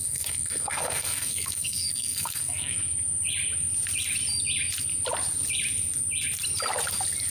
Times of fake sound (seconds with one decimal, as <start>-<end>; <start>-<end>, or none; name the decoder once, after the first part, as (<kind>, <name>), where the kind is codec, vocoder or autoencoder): 0.0-2.8 (codec, SNAC)